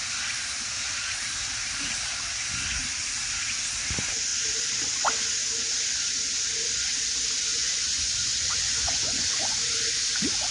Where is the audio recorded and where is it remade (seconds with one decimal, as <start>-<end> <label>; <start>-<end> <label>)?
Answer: 0.0-7.6 recorded; 7.6-9.6 remade; 9.6-10.5 recorded

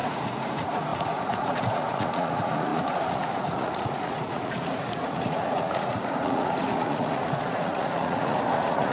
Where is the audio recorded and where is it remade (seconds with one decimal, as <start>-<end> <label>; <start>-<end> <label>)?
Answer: 0.0-8.9 remade

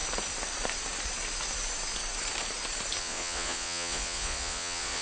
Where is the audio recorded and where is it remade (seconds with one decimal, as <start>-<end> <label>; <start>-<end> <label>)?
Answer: 0.0-3.0 recorded; 3.0-5.0 remade

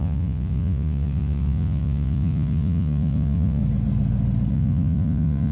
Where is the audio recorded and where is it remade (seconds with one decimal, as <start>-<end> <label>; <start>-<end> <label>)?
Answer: 0.0-3.6 remade; 3.6-4.5 recorded; 4.5-5.5 remade

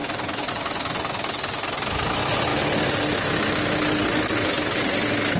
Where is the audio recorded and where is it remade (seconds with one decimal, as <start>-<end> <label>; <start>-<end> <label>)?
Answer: 0.0-5.4 recorded